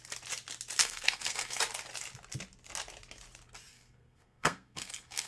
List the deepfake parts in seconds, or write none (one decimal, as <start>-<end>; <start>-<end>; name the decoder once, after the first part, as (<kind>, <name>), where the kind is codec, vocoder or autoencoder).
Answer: 0.8-1.6 (codec, SNAC); 3.7-5.3